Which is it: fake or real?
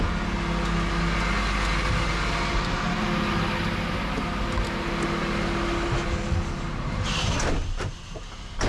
real